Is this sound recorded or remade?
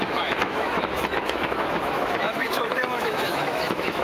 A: remade